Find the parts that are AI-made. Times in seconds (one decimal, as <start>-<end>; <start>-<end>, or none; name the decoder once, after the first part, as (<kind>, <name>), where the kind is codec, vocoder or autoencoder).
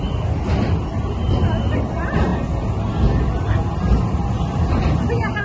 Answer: none